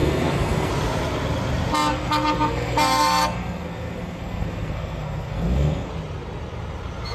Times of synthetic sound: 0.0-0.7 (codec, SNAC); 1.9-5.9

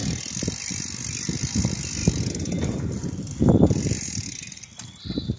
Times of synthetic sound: none

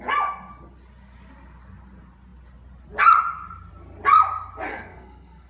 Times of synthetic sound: 4.7-5.5 (codec, SNAC)

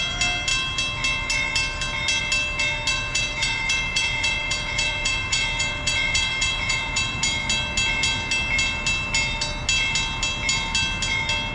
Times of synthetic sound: 2.9-7.2 (vocoder, Vocos)

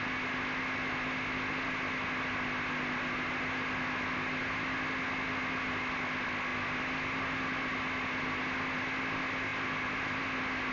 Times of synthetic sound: 9.5-10.2 (vocoder, BigVGAN v2)